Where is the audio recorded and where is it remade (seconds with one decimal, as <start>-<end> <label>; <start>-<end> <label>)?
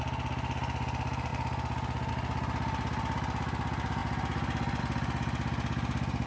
0.0-6.3 recorded